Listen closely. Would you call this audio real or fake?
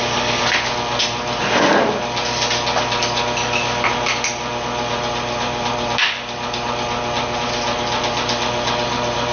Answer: real